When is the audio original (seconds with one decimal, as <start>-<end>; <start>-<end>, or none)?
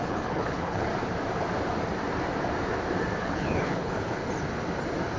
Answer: 0.9-3.2; 4.2-5.2